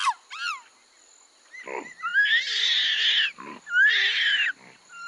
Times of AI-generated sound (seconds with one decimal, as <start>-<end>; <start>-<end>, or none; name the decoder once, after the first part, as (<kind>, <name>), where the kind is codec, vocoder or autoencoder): none